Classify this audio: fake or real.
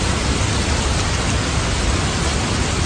real